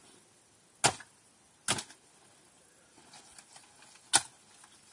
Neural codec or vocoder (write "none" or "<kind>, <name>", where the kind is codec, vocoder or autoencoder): none